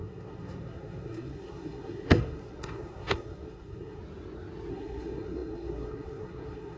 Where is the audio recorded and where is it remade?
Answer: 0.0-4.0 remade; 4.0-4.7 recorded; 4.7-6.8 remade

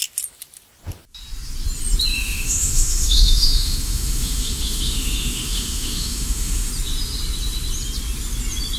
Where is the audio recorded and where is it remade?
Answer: 0.0-2.1 recorded; 2.1-6.7 remade; 6.7-8.8 recorded

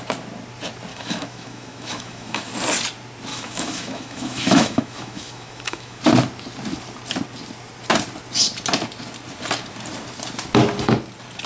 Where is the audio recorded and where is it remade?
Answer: 0.0-0.9 recorded; 0.9-2.5 remade; 2.5-3.3 recorded; 3.3-6.0 remade; 6.0-11.5 recorded

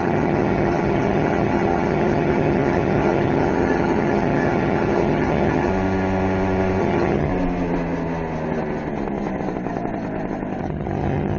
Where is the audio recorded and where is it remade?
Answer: 0.0-5.7 remade; 5.7-6.8 recorded; 6.8-7.3 remade; 7.3-10.6 recorded; 10.6-11.4 remade